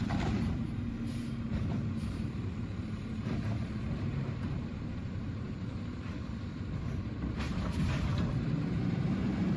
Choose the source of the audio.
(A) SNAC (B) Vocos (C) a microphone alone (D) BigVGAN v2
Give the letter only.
D